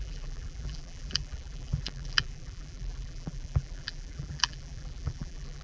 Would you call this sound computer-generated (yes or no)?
yes